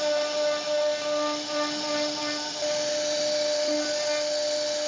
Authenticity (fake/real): real